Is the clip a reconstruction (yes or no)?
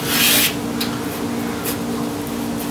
no